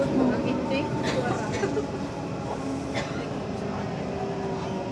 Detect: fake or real real